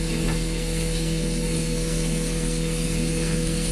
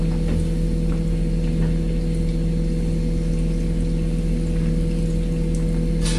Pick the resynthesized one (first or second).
first